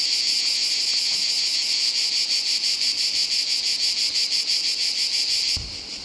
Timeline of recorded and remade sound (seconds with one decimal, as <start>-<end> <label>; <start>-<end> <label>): 0.0-6.0 recorded

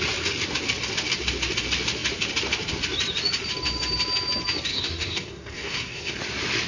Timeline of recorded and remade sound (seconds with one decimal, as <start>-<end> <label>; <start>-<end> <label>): 0.0-4.7 recorded; 4.7-6.2 remade; 6.2-6.7 recorded

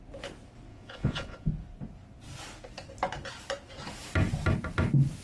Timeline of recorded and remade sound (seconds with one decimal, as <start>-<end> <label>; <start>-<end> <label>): 0.0-0.7 recorded; 0.7-1.5 remade; 1.5-5.2 recorded

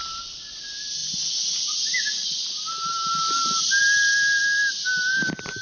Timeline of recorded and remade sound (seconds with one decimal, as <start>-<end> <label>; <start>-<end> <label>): 0.0-5.6 recorded

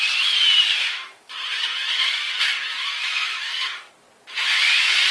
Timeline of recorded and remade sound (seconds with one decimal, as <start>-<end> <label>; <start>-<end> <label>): 0.0-0.7 recorded; 0.7-1.3 remade; 1.3-3.0 recorded; 3.0-3.9 remade; 3.9-5.1 recorded

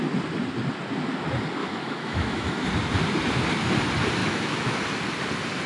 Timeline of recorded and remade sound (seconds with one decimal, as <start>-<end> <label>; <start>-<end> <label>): 0.0-1.6 recorded; 1.6-2.7 remade; 2.7-4.2 recorded; 4.2-4.8 remade; 4.8-5.7 recorded

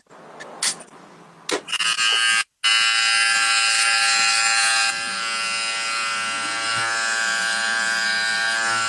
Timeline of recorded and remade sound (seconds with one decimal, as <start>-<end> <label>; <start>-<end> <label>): 0.0-8.9 recorded